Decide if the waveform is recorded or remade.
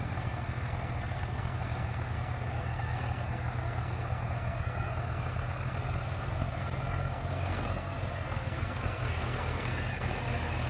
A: remade